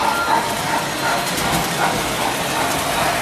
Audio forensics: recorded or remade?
recorded